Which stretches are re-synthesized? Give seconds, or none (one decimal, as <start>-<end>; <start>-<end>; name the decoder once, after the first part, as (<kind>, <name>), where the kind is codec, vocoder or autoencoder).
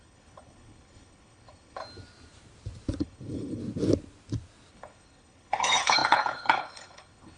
0.0-1.8 (codec, HILCodec); 3.0-3.6; 4.7-7.4